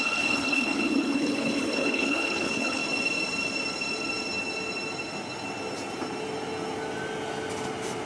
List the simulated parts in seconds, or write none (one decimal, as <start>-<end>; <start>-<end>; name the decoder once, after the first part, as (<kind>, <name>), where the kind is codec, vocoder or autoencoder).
0.0-2.8 (codec, HILCodec)